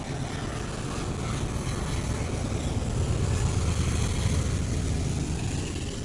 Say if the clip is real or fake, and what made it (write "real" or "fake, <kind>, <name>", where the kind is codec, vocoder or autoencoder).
real